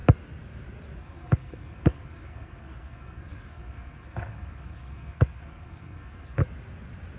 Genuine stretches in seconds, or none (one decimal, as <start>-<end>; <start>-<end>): 0.0-1.0; 6.4-7.2